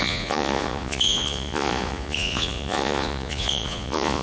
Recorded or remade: remade